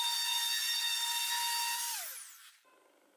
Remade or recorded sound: recorded